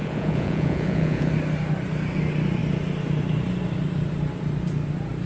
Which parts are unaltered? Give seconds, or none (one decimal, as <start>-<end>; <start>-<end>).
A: 1.3-5.3